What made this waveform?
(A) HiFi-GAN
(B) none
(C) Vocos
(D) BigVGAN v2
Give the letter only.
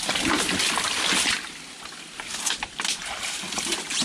D